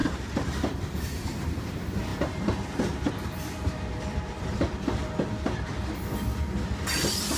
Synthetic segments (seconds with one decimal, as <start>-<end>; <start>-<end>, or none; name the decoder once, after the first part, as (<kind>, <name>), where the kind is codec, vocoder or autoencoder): 0.0-1.7 (vocoder, BigVGAN v2)